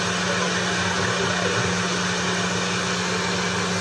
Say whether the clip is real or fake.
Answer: real